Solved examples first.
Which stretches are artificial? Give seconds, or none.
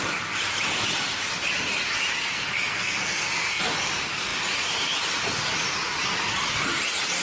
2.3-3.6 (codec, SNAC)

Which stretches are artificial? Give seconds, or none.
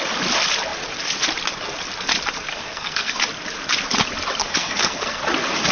2.5-3.2 (codec, SNAC); 4.4-5.2